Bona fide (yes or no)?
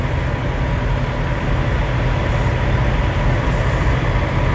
yes